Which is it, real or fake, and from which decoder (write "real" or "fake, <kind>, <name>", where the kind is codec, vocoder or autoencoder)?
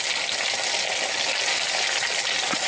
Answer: real